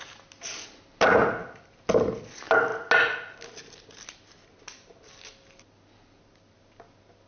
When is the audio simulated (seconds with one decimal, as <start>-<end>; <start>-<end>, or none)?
none